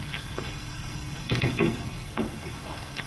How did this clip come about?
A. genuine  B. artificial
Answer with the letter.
B